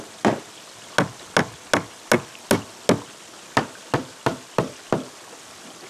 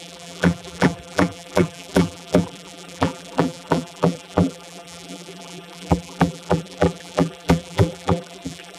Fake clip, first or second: second